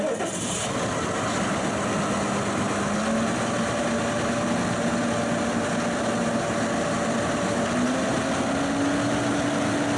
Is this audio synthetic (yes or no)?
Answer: no